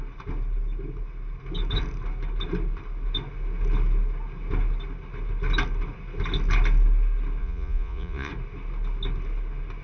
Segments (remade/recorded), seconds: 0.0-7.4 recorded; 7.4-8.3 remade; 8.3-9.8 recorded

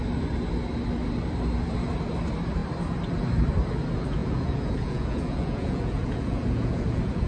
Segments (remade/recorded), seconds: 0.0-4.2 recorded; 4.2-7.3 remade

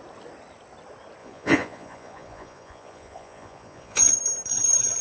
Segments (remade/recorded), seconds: 0.0-1.2 recorded; 1.2-4.2 remade; 4.2-5.0 recorded

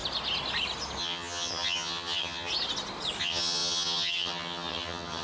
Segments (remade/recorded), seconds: 0.0-1.0 recorded; 1.0-2.5 remade; 2.5-3.2 recorded; 3.2-5.2 remade